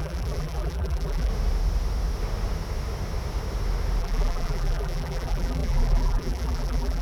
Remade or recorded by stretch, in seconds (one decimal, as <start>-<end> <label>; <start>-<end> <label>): 0.0-1.3 remade; 1.3-4.0 recorded; 4.0-7.0 remade